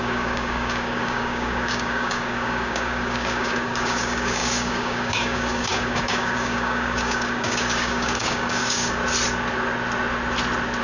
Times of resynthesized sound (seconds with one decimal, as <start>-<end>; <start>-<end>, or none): 0.0-9.0